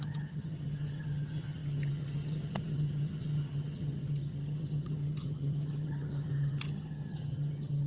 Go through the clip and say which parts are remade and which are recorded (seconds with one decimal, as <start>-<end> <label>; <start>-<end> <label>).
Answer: 0.0-7.9 remade